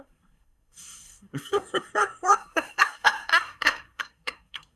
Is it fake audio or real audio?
fake